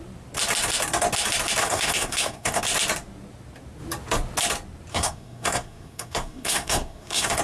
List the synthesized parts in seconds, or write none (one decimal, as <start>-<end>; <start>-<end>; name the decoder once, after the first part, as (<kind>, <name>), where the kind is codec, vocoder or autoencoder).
1.6-2.6 (codec, SNAC); 4.9-7.4